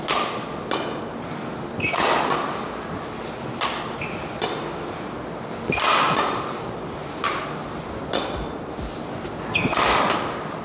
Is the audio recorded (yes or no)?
yes